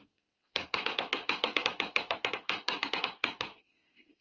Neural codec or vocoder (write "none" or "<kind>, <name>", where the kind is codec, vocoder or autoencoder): codec, SNAC